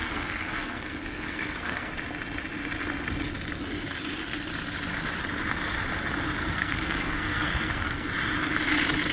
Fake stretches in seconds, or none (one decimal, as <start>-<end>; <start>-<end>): 0.0-1.9; 6.4-8.1